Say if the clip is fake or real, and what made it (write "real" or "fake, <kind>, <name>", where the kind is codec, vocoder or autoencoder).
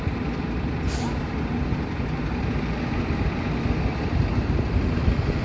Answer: real